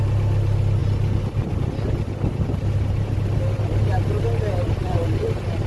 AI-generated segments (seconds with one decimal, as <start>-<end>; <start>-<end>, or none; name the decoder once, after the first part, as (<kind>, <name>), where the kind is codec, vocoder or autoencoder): 4.8-5.7 (vocoder, BigVGAN v2)